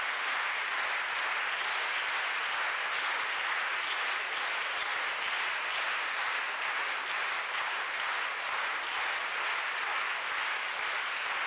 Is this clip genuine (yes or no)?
yes